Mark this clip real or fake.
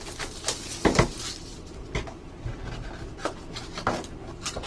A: real